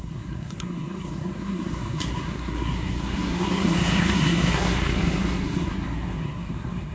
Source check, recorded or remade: remade